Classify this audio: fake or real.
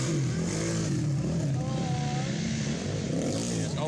real